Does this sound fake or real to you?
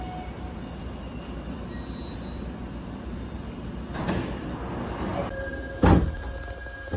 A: real